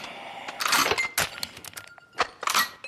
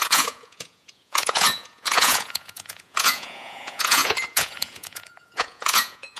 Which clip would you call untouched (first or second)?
first